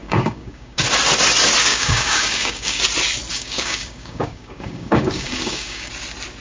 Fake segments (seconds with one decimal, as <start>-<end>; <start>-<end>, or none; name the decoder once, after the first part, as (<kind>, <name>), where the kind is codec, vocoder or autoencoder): 0.0-0.8 (codec, DAC); 1.7-2.8; 3.3-5.9